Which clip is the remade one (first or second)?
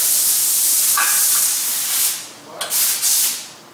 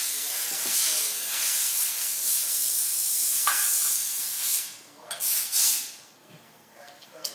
second